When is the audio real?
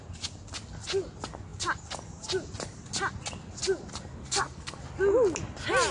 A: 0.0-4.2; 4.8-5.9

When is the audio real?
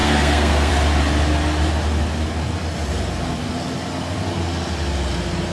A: 0.7-5.5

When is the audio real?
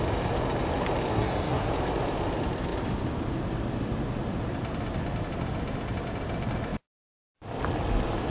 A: 0.0-1.1; 1.7-8.3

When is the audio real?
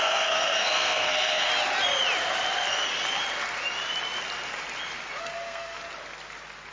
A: 1.5-5.2; 5.8-6.7